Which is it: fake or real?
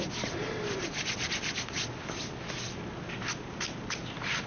real